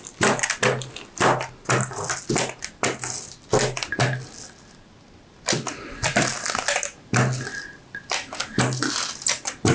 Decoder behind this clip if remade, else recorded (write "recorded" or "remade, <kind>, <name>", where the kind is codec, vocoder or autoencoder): recorded